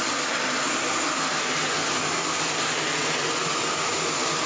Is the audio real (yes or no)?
yes